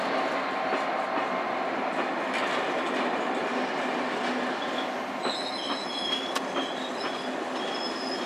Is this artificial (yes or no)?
no